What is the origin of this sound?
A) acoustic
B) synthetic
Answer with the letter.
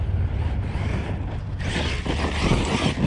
A